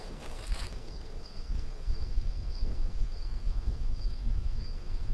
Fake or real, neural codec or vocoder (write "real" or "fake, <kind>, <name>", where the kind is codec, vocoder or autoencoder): fake, codec, SNAC